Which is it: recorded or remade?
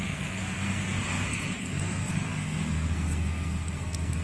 remade